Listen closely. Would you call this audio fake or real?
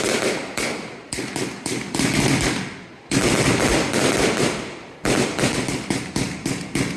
real